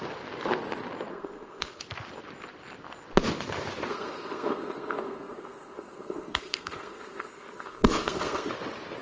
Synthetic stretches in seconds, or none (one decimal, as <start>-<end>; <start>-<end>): 1.1-1.8; 3.9-8.5